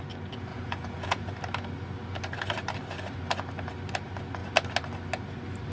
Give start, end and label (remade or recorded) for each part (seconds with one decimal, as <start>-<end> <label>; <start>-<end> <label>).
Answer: 0.0-0.5 recorded; 0.5-1.2 remade; 1.2-5.7 recorded